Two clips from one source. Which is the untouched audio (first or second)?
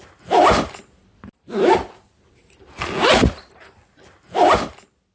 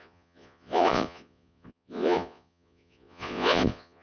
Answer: first